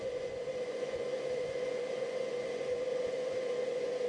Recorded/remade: remade